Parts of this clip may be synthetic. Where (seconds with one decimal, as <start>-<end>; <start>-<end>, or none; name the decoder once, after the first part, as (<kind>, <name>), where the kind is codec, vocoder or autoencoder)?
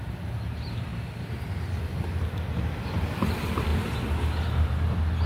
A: 0.0-0.9 (vocoder, BigVGAN v2); 3.3-3.7